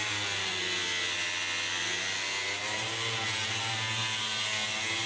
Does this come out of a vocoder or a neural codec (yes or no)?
no